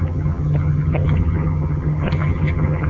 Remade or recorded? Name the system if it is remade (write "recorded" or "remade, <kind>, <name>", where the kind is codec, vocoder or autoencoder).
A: remade, vocoder, HiFi-GAN